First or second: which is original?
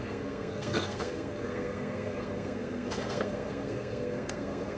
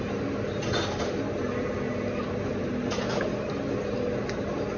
second